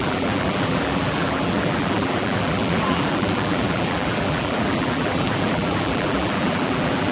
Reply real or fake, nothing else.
fake